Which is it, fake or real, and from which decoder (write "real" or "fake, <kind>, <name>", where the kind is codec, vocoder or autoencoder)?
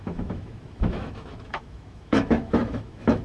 fake, autoencoder, DAC-VAE